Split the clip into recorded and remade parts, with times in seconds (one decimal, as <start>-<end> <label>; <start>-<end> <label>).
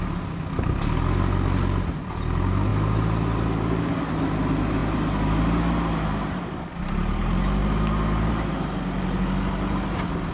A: 0.0-10.3 recorded